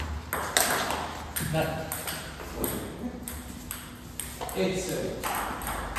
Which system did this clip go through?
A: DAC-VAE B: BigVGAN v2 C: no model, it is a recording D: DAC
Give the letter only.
C